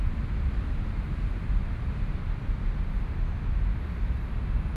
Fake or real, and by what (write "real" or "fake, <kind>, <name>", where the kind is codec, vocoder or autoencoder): fake, vocoder, BigVGAN v2